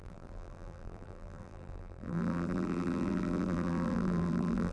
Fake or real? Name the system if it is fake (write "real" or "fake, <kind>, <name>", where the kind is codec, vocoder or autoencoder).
fake, vocoder, BigVGAN v2